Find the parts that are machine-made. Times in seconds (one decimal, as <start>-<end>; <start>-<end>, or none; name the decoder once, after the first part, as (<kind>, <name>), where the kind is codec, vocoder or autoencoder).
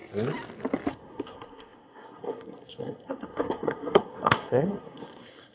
0.9-5.5 (codec, SNAC)